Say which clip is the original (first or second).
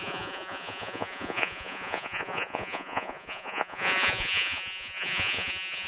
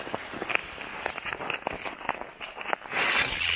second